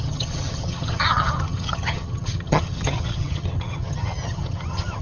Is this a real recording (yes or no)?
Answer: no